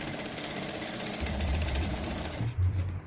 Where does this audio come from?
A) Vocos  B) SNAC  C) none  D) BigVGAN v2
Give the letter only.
D